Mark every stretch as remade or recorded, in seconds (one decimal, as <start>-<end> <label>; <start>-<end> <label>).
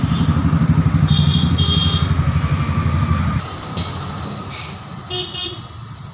0.0-6.1 recorded